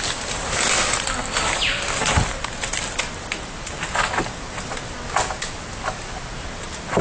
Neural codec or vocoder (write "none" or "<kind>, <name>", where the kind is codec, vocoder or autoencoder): none